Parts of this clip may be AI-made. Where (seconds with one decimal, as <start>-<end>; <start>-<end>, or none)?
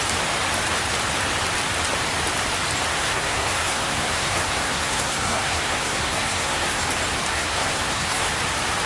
2.9-6.8; 7.3-8.3